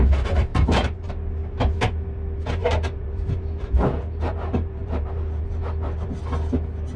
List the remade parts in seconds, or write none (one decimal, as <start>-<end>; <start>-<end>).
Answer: 0.5-1.1; 2.6-5.6